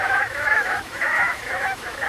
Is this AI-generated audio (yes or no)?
yes